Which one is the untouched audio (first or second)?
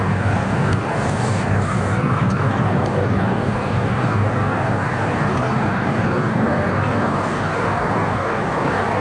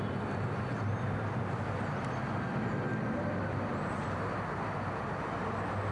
second